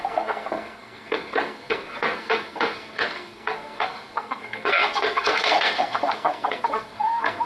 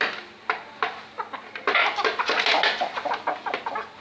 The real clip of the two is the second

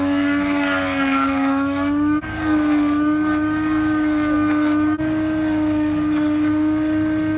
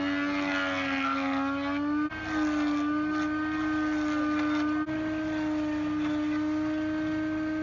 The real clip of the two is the second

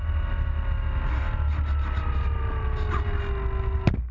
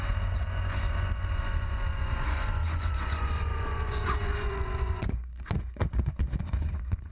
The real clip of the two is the first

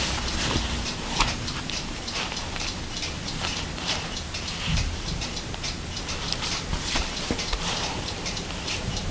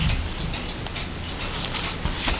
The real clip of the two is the second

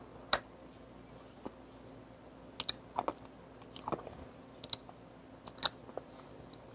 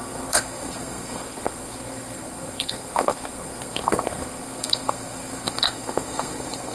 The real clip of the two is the first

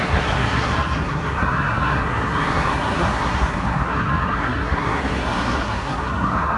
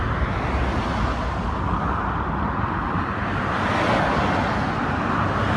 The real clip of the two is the second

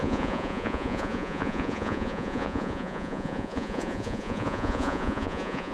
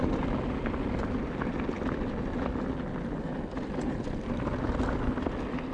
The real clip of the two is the second